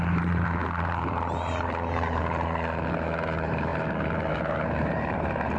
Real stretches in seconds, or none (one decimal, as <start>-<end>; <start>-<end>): none